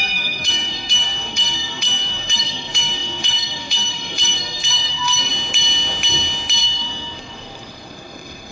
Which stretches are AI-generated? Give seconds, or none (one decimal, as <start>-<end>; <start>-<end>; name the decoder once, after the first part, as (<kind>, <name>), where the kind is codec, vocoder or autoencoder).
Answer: 0.0-5.3 (codec, SNAC); 6.6-8.5